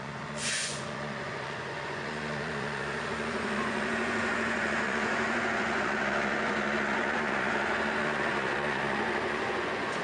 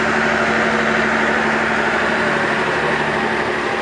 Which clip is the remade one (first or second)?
first